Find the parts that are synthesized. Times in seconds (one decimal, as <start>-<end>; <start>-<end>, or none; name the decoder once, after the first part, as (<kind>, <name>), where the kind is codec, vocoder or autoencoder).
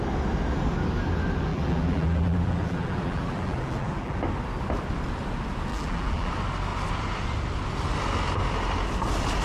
1.5-4.2 (vocoder, BigVGAN v2); 5.7-6.3